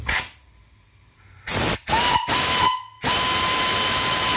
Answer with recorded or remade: recorded